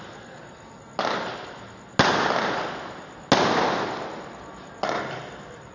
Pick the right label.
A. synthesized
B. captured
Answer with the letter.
B